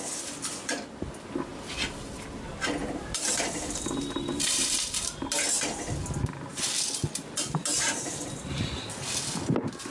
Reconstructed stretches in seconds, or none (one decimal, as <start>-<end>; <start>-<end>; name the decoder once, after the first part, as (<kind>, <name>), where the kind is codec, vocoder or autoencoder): 2.8-5.4 (vocoder, BigVGAN v2); 7.6-9.1